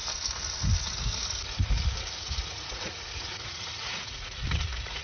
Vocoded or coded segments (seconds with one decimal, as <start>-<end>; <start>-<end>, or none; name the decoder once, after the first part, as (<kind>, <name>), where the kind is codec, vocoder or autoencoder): 2.2-5.0 (vocoder, Vocos)